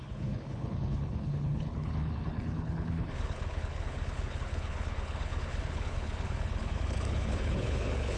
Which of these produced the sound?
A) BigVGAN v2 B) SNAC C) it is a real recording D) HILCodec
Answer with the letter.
D